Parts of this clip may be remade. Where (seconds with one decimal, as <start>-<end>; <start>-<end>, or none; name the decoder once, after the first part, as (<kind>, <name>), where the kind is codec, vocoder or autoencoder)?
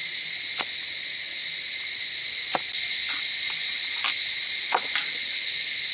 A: none